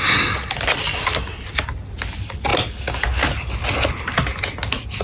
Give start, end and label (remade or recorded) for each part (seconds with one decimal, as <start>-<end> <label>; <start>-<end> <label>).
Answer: 0.0-5.0 recorded

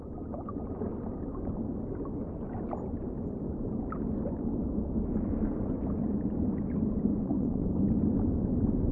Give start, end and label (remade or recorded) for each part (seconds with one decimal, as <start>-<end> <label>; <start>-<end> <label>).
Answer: 0.0-7.1 recorded; 7.1-7.7 remade; 7.7-8.9 recorded

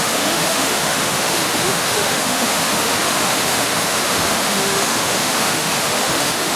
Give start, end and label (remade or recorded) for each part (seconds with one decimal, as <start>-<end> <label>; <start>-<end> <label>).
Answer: 0.0-6.6 remade